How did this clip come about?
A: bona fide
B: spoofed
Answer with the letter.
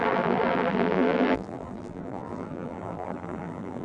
B